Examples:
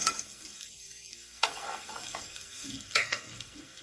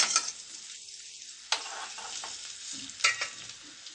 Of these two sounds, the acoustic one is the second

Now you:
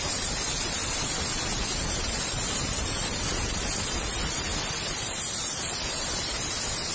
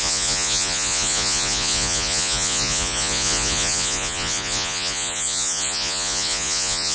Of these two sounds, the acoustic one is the first